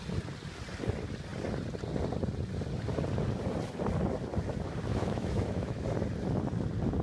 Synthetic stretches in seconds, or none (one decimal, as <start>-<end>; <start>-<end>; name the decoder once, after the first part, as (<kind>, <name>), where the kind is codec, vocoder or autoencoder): 4.9-5.8 (autoencoder, DAC-VAE)